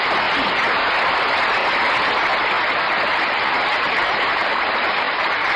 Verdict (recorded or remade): recorded